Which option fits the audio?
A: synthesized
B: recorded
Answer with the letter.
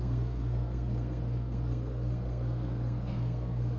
A